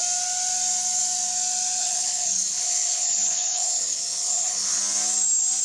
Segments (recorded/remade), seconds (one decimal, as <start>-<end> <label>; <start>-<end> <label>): 0.0-1.8 recorded; 1.8-4.8 remade; 4.8-5.6 recorded